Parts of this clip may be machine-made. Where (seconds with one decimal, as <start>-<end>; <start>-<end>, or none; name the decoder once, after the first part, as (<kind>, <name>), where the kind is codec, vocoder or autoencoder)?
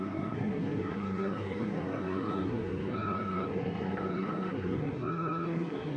0.0-6.0 (codec, SNAC)